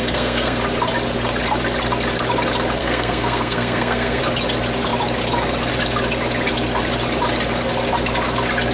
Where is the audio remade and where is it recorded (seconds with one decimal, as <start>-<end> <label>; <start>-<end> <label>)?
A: 0.0-0.6 remade; 0.6-2.8 recorded; 2.8-4.2 remade; 4.2-8.7 recorded